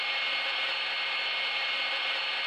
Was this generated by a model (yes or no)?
no